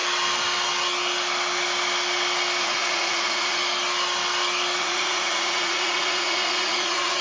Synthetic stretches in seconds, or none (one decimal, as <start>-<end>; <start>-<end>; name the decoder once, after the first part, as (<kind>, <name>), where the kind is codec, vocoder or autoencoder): 2.6-3.6 (vocoder, Vocos); 4.8-7.2